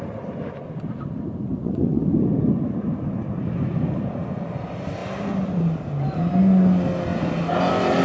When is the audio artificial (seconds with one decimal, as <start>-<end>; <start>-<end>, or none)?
1.5-2.0